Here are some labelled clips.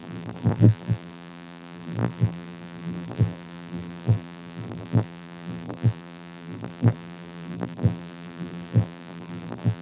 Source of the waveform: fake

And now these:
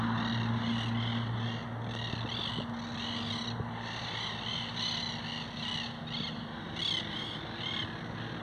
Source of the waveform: real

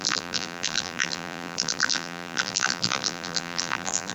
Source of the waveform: fake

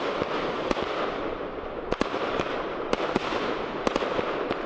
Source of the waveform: fake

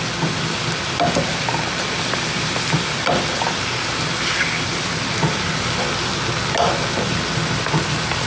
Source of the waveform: real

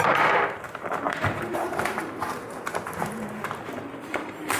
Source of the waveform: fake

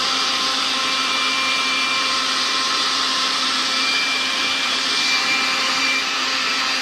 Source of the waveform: fake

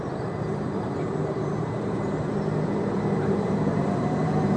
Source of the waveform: fake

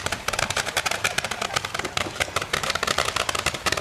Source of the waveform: fake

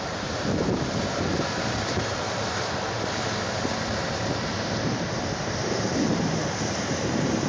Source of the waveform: fake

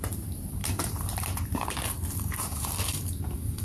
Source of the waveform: fake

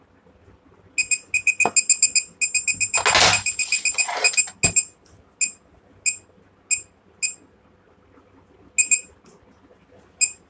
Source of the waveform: real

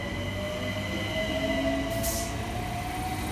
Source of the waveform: real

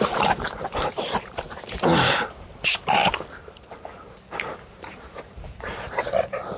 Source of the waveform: fake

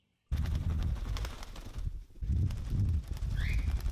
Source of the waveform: real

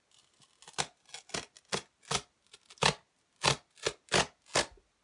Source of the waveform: real